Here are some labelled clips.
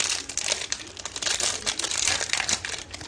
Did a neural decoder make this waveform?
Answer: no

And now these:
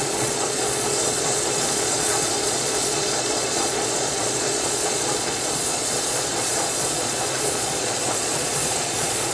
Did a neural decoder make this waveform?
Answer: yes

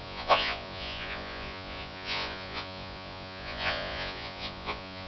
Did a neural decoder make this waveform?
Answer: yes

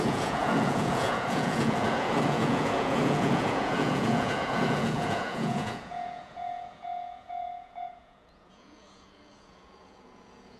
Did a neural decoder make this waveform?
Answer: yes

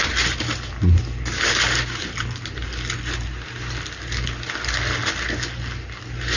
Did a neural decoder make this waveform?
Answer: no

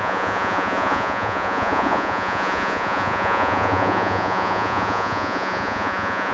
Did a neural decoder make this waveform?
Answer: yes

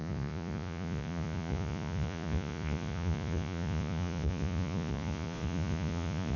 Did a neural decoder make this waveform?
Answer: yes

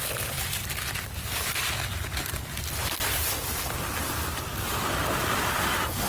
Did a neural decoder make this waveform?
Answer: no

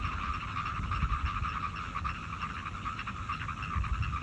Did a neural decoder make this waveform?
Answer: no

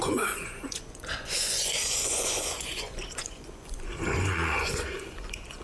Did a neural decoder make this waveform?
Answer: yes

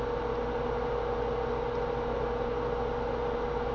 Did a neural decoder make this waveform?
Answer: no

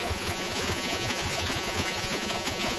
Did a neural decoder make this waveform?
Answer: yes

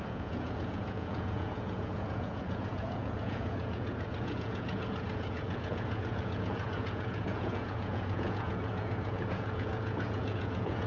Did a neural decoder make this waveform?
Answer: yes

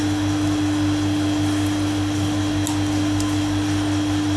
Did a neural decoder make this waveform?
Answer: no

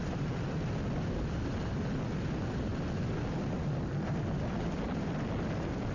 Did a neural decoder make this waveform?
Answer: no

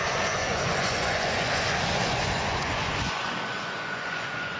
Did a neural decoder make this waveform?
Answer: yes